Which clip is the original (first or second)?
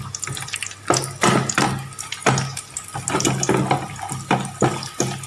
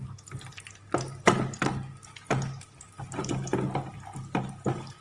first